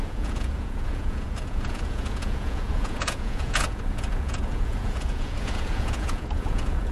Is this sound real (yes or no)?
no